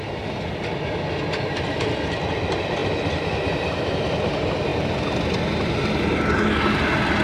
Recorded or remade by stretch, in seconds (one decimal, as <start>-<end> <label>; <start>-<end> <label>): 0.0-7.2 recorded